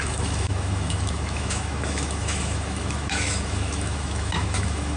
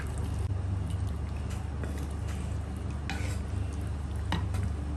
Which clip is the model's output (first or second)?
first